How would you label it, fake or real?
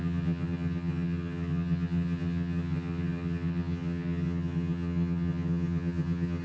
fake